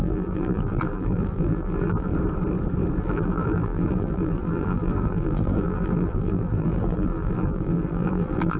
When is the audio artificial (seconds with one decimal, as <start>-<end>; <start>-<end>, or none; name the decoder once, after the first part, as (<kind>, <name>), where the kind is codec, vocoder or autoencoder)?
0.0-2.1 (vocoder, BigVGAN v2); 3.0-8.6